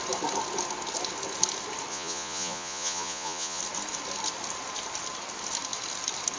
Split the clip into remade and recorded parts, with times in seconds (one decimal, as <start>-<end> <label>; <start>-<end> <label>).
0.0-1.9 recorded; 1.9-3.6 remade; 3.6-6.4 recorded